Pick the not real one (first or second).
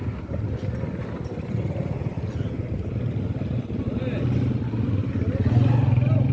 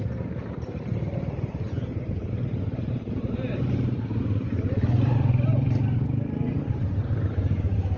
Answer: second